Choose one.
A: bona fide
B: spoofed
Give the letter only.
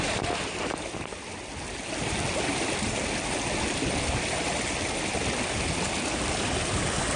A